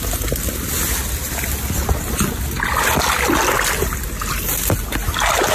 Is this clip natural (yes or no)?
yes